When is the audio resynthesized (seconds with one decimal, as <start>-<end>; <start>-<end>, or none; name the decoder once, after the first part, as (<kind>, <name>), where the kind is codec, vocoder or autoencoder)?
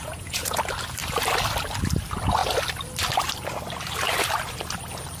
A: 0.0-0.6 (vocoder, Vocos)